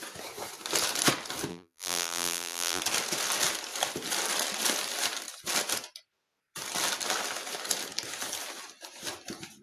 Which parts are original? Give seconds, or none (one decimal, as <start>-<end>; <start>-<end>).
0.0-1.5; 2.8-9.6